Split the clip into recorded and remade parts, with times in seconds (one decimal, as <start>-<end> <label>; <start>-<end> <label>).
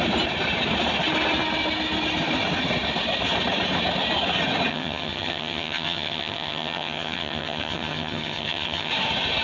0.0-4.7 recorded; 4.7-8.9 remade; 8.9-9.4 recorded